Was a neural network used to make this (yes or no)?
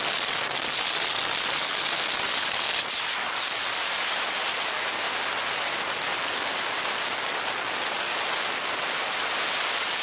no